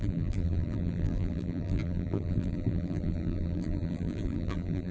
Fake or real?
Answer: fake